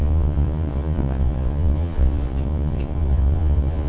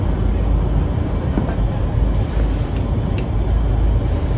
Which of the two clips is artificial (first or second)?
first